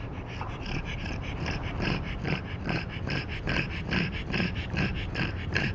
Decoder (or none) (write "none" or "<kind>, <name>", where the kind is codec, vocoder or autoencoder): vocoder, BigVGAN v2